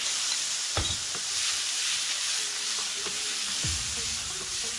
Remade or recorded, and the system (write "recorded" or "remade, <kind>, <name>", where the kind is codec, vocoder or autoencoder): remade, vocoder, BigVGAN v2